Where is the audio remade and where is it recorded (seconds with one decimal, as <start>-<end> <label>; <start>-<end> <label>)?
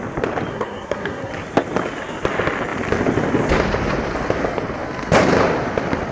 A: 0.0-0.5 recorded; 0.5-1.3 remade; 1.3-6.1 recorded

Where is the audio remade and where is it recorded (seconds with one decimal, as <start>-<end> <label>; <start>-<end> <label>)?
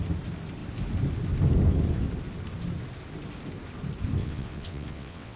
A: 0.0-4.2 recorded; 4.2-5.4 remade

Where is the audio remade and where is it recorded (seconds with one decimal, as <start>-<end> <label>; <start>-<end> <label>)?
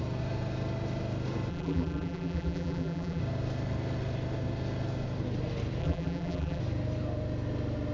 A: 0.0-1.5 recorded; 1.5-3.2 remade; 3.2-5.8 recorded; 5.8-6.6 remade; 6.6-7.9 recorded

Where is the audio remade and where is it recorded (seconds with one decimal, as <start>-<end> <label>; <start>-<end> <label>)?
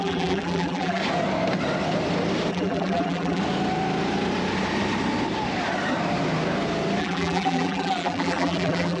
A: 0.0-1.0 remade; 1.0-2.5 recorded; 2.5-3.4 remade; 3.4-7.0 recorded; 7.0-9.0 remade